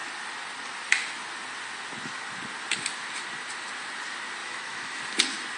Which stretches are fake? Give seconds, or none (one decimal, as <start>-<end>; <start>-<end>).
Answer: 4.4-5.0

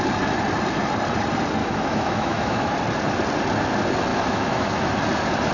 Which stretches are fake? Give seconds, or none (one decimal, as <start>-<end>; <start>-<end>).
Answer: 1.6-2.7; 4.1-4.9

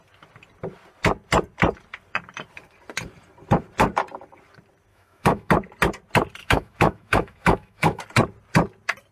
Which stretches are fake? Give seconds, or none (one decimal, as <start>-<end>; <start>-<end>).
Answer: 4.9-5.5; 6.4-8.0

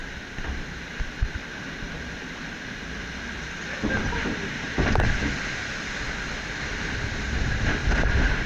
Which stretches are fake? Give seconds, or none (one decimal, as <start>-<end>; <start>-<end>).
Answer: none

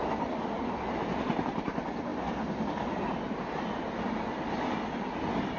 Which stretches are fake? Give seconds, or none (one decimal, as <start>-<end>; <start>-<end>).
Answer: none

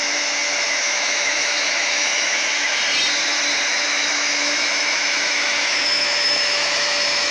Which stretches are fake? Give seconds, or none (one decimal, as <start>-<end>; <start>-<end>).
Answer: 0.0-2.8; 3.7-7.3

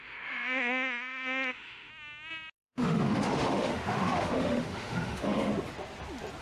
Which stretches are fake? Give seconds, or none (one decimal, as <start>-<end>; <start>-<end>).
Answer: 0.0-1.9; 2.5-5.5